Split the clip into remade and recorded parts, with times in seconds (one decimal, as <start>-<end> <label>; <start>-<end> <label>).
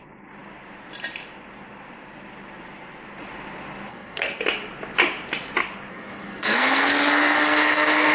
0.0-3.9 recorded; 3.9-4.4 remade; 4.4-5.9 recorded; 5.9-8.1 remade